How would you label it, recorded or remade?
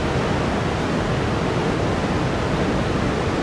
recorded